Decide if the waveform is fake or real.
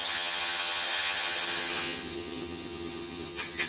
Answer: fake